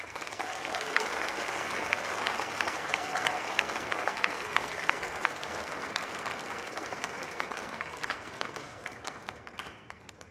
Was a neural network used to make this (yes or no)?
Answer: yes